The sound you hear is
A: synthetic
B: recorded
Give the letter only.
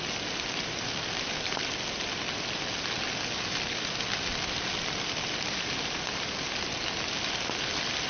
B